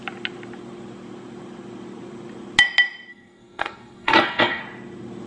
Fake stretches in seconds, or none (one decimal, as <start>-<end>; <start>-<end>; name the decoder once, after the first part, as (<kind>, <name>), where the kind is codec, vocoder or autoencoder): 3.1-4.6 (codec, SNAC)